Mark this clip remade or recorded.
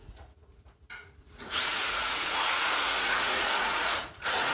remade